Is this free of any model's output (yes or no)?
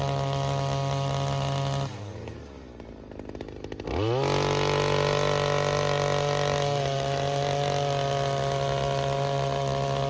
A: yes